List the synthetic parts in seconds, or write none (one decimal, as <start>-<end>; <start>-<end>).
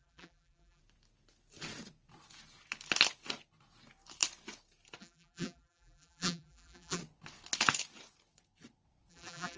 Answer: 0.0-0.8; 5.0-7.0; 9.1-9.6